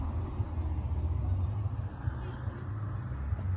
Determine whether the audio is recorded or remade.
recorded